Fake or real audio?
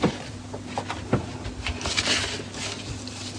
real